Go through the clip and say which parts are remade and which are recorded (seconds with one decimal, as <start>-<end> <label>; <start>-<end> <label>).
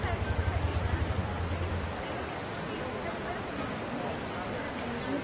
0.0-5.2 recorded